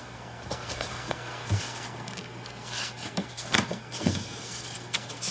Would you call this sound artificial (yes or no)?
yes